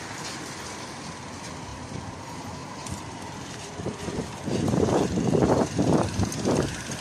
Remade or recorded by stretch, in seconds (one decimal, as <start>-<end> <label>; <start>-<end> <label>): 0.0-2.6 recorded; 2.6-6.3 remade; 6.3-7.0 recorded